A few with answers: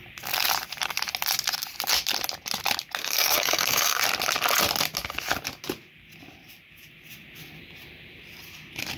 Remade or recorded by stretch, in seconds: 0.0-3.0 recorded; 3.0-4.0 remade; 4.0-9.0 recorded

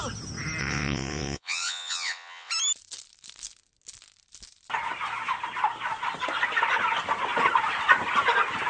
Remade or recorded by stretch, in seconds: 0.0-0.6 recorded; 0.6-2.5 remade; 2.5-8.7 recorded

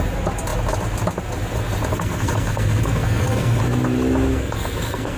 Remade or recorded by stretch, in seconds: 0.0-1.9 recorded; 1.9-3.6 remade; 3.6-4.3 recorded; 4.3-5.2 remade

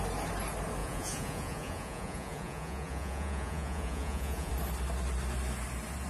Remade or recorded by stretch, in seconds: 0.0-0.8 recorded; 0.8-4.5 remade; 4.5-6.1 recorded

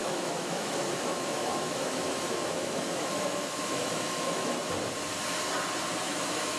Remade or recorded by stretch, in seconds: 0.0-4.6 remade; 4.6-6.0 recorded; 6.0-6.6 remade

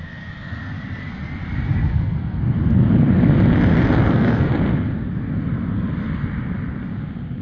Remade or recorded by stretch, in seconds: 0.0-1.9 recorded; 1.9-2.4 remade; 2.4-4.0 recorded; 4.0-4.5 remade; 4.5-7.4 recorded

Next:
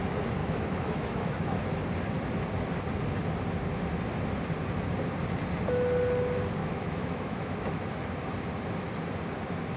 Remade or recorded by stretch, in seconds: 0.0-0.4 recorded; 0.4-1.6 remade; 1.6-6.6 recorded; 6.6-7.9 remade; 7.9-9.8 recorded

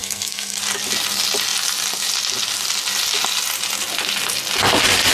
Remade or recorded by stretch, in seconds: 0.0-0.6 remade; 0.6-5.1 recorded